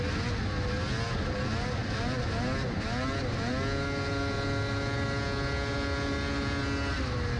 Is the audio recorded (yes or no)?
yes